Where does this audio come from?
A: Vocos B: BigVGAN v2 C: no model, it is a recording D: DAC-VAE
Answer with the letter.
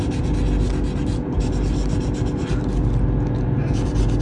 C